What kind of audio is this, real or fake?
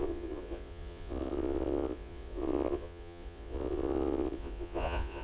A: fake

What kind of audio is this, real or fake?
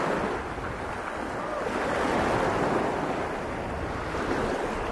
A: real